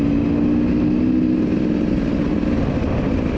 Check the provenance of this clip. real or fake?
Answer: real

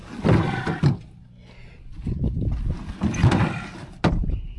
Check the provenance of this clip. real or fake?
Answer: real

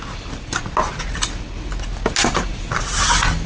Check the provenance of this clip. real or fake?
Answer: real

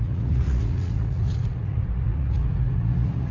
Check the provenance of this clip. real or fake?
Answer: fake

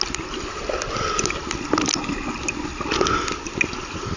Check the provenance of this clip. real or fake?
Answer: real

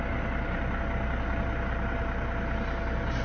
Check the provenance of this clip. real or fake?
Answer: real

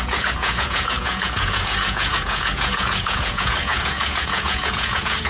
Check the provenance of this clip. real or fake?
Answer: fake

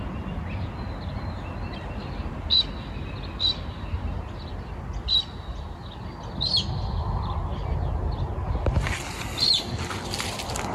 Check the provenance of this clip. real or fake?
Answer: real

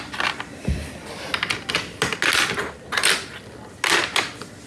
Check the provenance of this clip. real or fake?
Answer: real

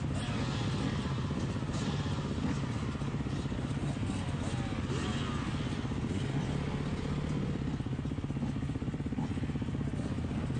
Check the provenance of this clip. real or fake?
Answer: real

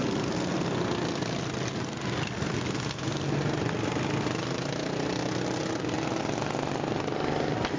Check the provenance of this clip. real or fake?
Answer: real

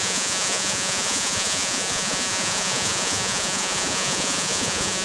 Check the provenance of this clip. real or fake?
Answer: fake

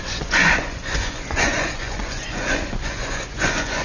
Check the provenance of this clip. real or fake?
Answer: fake